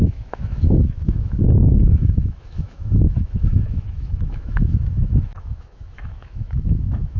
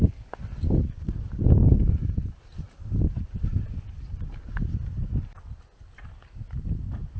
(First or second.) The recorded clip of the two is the second